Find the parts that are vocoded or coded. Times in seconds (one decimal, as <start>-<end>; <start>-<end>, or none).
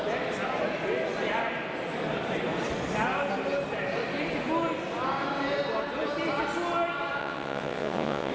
7.2-8.3